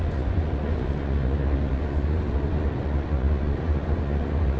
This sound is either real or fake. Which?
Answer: fake